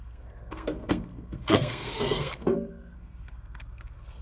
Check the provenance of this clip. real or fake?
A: fake